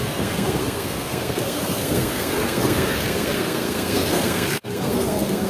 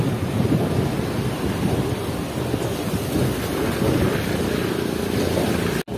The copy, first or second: first